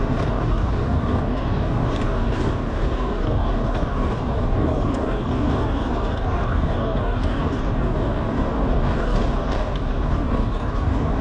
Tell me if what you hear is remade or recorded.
remade